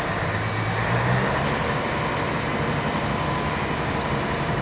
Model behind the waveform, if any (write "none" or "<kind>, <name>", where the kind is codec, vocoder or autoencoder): none